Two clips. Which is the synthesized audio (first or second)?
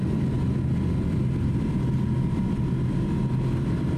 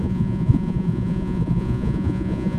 second